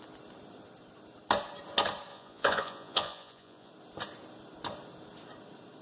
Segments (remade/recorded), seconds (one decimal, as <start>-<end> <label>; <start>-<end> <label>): 0.0-2.1 recorded; 2.1-3.7 remade; 3.7-5.8 recorded